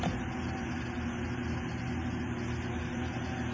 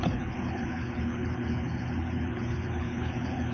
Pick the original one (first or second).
first